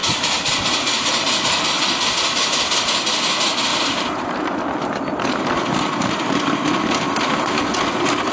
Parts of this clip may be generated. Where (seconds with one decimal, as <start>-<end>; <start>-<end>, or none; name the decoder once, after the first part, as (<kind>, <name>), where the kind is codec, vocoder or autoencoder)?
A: none